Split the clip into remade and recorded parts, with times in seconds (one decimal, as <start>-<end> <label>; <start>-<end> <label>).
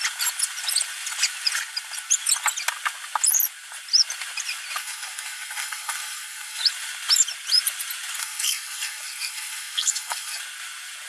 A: 0.0-4.8 recorded; 4.8-6.6 remade; 6.6-8.2 recorded; 8.2-10.4 remade; 10.4-11.1 recorded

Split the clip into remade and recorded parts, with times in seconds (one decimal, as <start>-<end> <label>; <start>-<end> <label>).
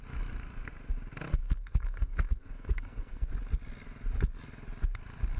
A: 0.0-1.4 recorded; 1.4-3.3 remade; 3.3-5.4 recorded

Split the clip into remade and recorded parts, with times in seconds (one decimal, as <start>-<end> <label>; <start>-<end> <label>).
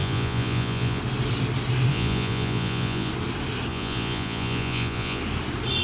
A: 0.0-1.0 remade; 1.0-1.9 recorded; 1.9-3.1 remade; 3.1-3.7 recorded; 3.7-5.2 remade; 5.2-5.8 recorded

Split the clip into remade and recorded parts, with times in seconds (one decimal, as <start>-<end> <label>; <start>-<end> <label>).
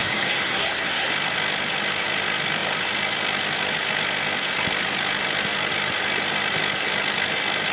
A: 0.0-1.1 remade; 1.1-7.7 recorded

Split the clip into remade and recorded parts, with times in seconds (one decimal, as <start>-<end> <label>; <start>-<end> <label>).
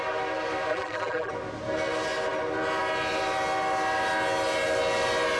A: 0.0-0.7 recorded; 0.7-1.3 remade; 1.3-5.4 recorded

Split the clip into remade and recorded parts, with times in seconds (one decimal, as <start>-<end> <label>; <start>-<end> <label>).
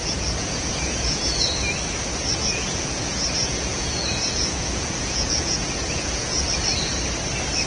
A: 0.0-1.4 remade; 1.4-2.4 recorded; 2.4-6.5 remade; 6.5-7.7 recorded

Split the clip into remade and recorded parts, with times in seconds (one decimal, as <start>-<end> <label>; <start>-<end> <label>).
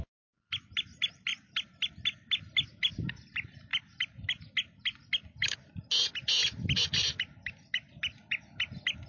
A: 0.0-9.1 recorded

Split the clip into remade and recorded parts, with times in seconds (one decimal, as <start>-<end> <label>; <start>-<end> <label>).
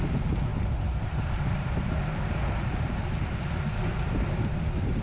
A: 0.0-0.5 recorded; 0.5-3.5 remade; 3.5-5.0 recorded